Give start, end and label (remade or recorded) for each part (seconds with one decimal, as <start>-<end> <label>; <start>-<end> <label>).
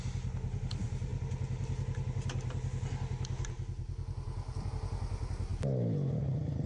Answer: 0.0-6.7 recorded